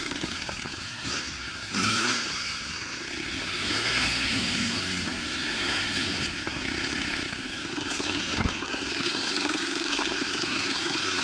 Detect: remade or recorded remade